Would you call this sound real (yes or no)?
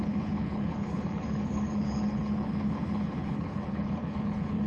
no